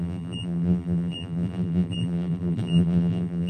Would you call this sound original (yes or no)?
no